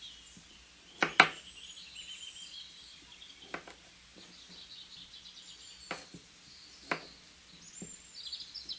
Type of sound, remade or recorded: recorded